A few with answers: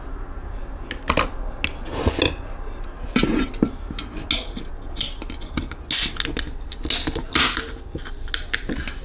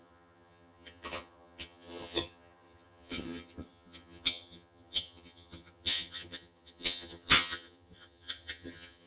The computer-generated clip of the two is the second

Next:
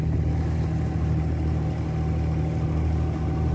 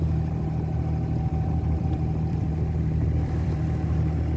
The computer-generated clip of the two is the second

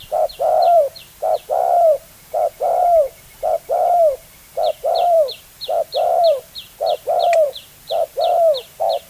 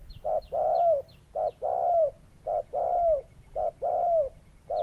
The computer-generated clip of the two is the first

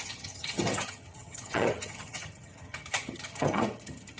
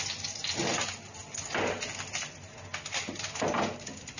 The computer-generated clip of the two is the first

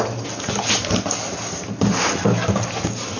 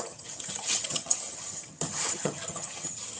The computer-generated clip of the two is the second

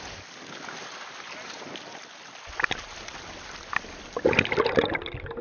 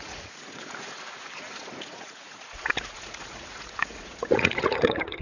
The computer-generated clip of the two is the second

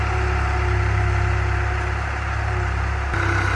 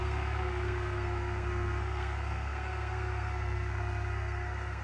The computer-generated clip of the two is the second